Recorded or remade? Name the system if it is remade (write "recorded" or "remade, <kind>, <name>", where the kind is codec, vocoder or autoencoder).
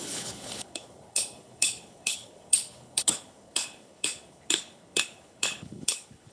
remade, codec, HILCodec